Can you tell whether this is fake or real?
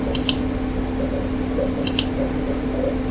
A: real